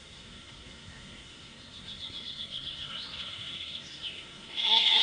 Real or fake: fake